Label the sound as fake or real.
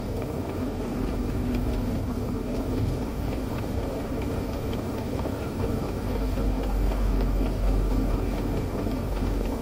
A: fake